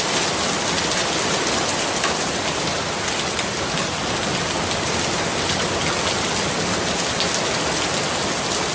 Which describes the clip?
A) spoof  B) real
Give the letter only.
B